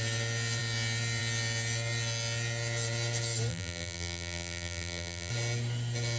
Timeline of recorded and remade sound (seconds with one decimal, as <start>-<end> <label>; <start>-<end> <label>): 0.0-3.5 recorded; 3.5-5.3 remade; 5.3-6.2 recorded